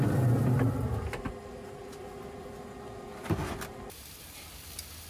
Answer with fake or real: real